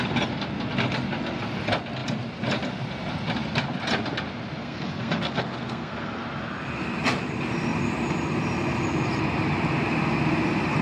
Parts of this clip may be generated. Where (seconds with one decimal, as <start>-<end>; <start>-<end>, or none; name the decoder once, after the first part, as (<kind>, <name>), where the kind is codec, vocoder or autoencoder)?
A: 4.6-6.2 (codec, SNAC)

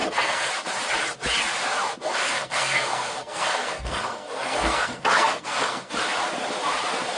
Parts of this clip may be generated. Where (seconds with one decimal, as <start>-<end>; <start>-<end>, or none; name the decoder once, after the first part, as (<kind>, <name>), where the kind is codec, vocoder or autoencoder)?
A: 0.0-0.5 (codec, SNAC); 2.1-5.9

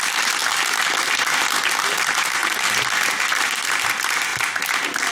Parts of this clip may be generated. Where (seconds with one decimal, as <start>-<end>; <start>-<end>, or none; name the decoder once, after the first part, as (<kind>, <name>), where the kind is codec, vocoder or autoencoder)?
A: 0.4-1.1 (vocoder, BigVGAN v2)

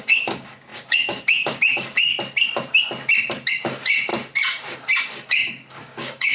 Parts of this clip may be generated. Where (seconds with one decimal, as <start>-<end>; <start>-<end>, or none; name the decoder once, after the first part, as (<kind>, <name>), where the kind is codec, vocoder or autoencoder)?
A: 0.0-2.1 (codec, DAC); 3.5-4.1; 5.0-6.3

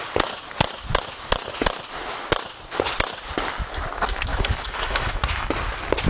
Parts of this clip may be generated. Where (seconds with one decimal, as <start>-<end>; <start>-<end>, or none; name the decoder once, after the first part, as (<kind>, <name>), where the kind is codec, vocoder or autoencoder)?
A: 4.3-5.5 (autoencoder, DAC-VAE)

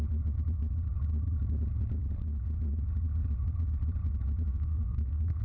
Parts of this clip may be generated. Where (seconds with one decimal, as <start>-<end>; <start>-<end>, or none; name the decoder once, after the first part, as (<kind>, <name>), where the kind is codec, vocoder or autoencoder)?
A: 4.5-5.4 (codec, SNAC)

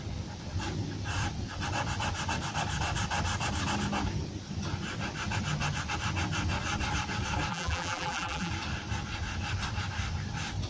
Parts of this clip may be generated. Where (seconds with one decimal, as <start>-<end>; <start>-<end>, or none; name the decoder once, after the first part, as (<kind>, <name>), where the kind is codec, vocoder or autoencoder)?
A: 7.5-8.5 (vocoder, BigVGAN v2)